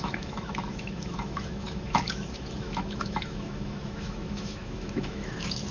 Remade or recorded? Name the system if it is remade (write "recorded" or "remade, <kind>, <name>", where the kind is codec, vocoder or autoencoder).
remade, autoencoder, DAC-VAE